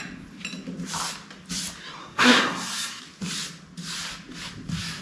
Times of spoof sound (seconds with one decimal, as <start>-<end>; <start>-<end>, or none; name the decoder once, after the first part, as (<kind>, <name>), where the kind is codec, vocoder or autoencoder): 2.0-3.0 (codec, SNAC)